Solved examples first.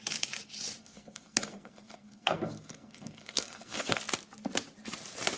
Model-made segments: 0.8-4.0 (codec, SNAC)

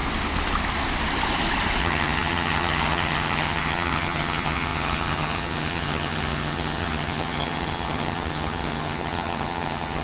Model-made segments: 1.8-10.0 (vocoder, HiFi-GAN)

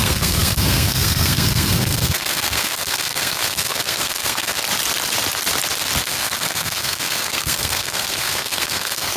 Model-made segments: 0.0-4.6 (codec, SNAC); 6.0-9.2

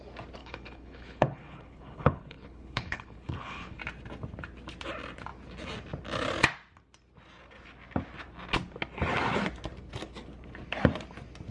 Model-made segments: 0.4-3.8 (codec, HILCodec)

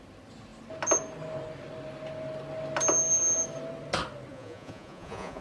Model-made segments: 4.3-5.4 (vocoder, Vocos)

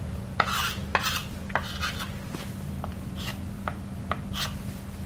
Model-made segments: 0.0-0.8 (vocoder, Vocos); 2.9-3.3